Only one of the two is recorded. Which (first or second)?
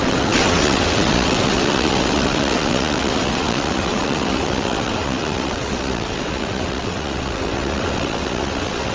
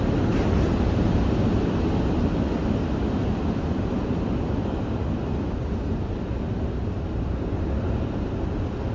second